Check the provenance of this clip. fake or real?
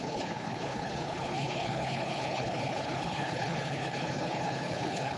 fake